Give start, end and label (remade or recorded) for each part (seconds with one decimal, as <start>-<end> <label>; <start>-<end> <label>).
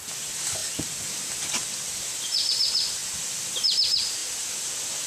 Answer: 0.0-5.1 recorded